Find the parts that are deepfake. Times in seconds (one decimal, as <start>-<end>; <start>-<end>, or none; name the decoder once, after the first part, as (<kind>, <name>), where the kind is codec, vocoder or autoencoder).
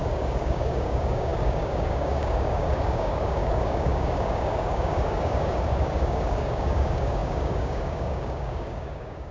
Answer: 0.0-9.3 (codec, DAC)